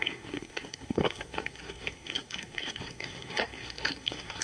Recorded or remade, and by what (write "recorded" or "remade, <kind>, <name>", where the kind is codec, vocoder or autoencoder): remade, codec, SNAC